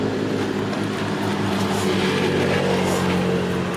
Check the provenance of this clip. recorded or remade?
recorded